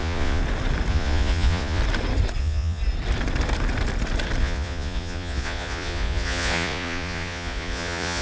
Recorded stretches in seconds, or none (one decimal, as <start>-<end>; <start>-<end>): 0.4-0.9; 1.8-2.4; 2.8-4.4